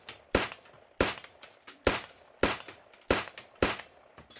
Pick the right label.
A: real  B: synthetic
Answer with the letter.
A